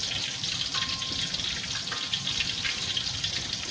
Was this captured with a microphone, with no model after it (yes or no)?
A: yes